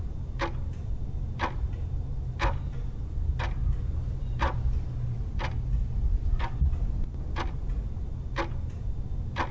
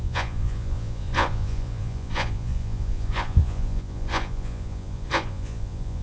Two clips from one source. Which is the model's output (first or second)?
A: second